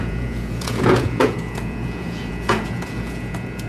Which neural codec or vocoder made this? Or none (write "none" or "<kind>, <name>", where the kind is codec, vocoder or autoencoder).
vocoder, Vocos